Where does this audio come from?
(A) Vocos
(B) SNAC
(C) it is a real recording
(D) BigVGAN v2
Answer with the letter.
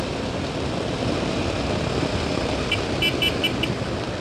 C